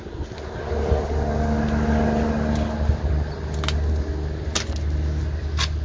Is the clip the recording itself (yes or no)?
yes